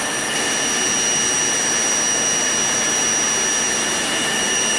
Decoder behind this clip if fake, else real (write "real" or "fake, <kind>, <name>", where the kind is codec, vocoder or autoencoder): real